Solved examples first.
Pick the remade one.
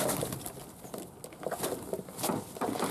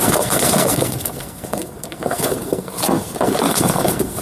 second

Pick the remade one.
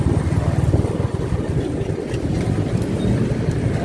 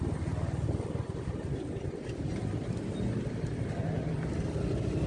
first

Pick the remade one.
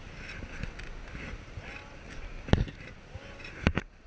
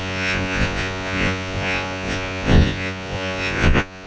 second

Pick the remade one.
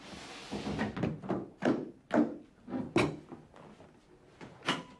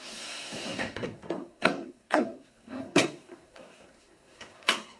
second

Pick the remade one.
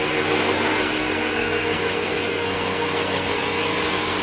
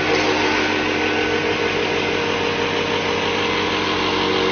first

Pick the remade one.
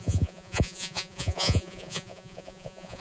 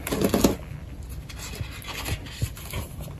first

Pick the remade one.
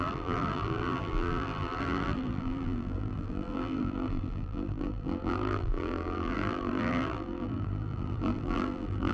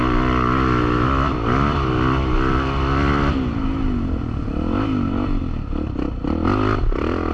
first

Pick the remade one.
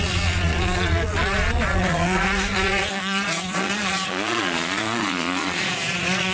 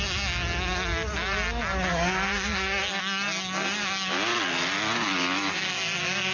first